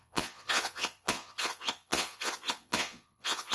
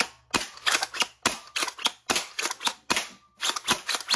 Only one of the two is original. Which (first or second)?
second